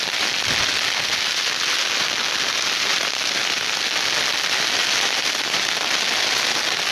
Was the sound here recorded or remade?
recorded